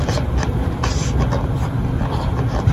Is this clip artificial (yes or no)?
no